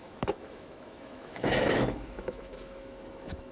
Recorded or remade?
remade